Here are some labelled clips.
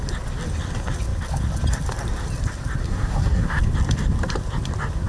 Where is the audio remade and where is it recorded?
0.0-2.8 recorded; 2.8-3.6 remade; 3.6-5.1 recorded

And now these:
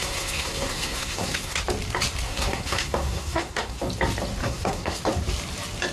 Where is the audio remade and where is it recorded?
0.0-1.6 remade; 1.6-2.3 recorded; 2.3-3.8 remade; 3.8-4.4 recorded; 4.4-5.0 remade; 5.0-5.9 recorded